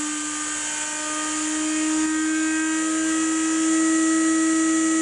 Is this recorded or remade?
recorded